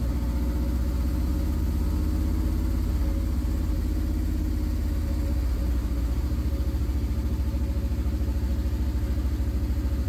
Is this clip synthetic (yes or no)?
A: no